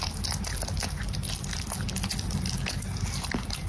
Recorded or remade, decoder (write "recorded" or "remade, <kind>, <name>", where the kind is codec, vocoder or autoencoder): recorded